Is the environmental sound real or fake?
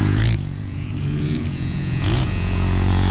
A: fake